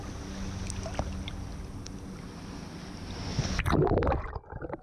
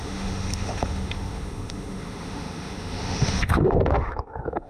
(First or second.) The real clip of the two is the first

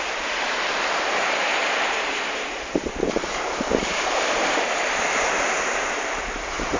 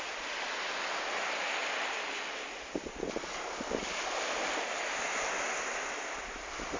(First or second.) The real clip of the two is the second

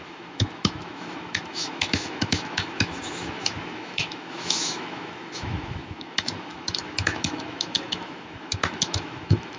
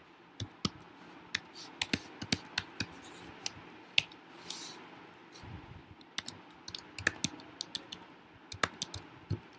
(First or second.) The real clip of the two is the second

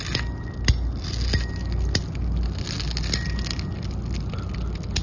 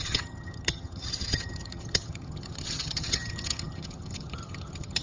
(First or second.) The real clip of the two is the first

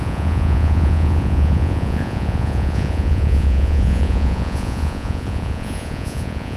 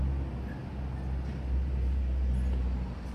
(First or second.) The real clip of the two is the second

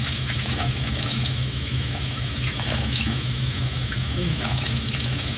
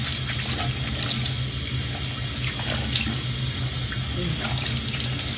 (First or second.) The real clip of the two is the second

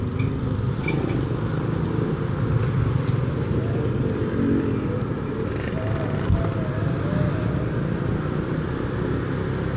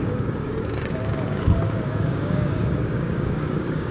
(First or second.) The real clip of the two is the first